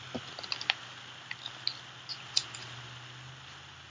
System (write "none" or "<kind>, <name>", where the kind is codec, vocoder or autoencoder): none